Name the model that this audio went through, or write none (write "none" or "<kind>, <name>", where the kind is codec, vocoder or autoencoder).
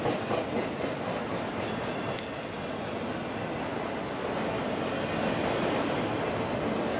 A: none